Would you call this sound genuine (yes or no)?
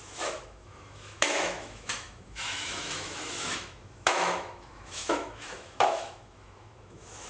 no